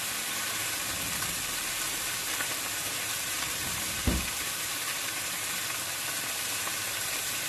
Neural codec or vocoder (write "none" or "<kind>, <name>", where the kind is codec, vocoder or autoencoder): vocoder, BigVGAN v2